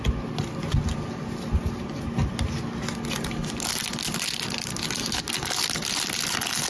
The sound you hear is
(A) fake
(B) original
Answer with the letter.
B